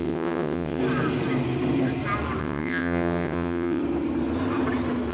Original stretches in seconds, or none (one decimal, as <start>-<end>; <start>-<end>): 0.8-2.4; 3.8-5.1